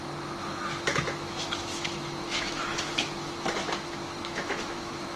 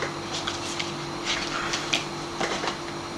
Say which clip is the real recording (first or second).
second